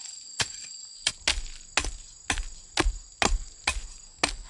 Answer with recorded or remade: recorded